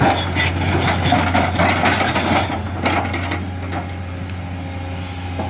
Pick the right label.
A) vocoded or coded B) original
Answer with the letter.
B